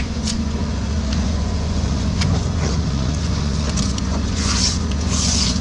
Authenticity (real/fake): fake